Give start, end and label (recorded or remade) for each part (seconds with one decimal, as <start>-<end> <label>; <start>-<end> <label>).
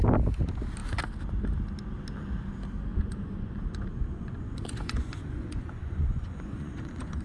0.0-2.9 recorded; 2.9-7.2 remade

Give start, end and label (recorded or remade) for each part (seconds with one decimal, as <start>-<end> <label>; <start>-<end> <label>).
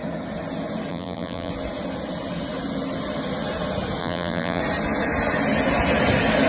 0.0-0.9 recorded; 0.9-1.5 remade; 1.5-4.0 recorded; 4.0-4.6 remade; 4.6-6.5 recorded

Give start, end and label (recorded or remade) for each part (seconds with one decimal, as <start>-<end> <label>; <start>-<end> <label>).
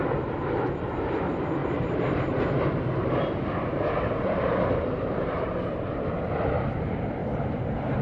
0.0-1.6 recorded; 1.6-6.3 remade; 6.3-7.2 recorded; 7.2-8.0 remade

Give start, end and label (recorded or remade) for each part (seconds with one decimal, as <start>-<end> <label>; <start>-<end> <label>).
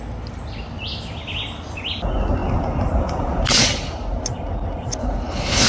0.0-5.0 recorded; 5.0-5.7 remade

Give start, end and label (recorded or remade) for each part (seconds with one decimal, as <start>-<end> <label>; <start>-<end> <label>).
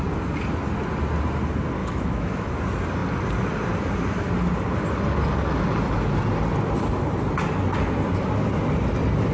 0.0-1.8 recorded; 1.8-2.5 remade; 2.5-9.3 recorded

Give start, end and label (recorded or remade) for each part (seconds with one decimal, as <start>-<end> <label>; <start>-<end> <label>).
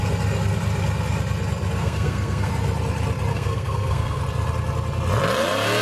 0.0-1.8 recorded; 1.8-2.5 remade; 2.5-3.3 recorded; 3.3-4.2 remade; 4.2-5.8 recorded